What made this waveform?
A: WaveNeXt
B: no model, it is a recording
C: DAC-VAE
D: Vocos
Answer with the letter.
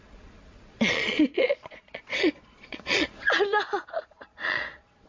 D